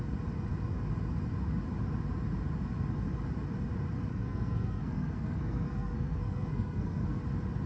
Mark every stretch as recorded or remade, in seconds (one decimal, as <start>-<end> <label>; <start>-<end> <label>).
0.0-4.1 recorded; 4.1-7.2 remade; 7.2-7.7 recorded